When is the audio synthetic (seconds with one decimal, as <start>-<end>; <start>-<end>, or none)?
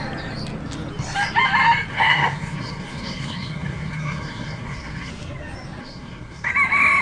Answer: 1.9-5.1; 5.8-6.5